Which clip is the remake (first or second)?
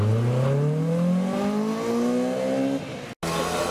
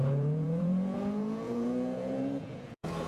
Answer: second